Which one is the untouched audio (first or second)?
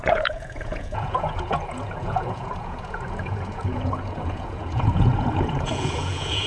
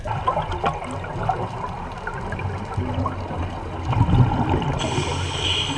second